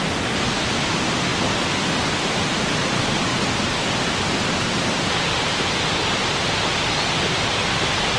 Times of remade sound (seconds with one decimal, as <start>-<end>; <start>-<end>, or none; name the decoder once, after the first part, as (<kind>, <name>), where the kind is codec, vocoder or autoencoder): none